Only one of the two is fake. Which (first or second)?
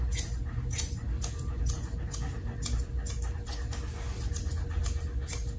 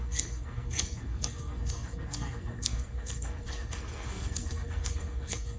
second